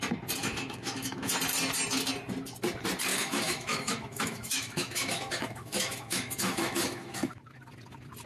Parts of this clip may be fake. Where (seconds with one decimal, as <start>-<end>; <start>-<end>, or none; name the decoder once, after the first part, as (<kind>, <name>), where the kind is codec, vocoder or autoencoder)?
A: 0.4-1.3 (autoencoder, DAC-VAE); 3.1-7.4